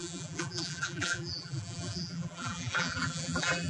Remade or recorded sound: remade